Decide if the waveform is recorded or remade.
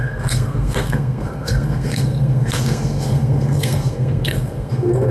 remade